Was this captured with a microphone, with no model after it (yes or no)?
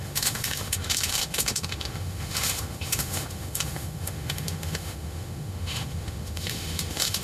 no